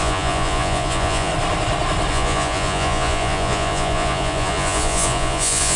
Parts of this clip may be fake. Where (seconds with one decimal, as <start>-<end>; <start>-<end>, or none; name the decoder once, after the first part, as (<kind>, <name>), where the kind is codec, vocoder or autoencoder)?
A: 0.0-1.3 (vocoder, Vocos); 2.1-5.8